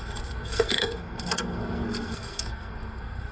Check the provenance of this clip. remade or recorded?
remade